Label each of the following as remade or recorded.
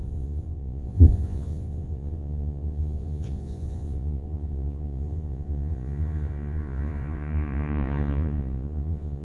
remade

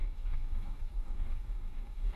remade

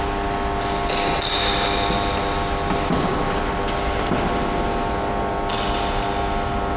recorded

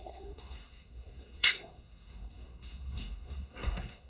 remade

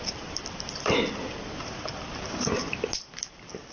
recorded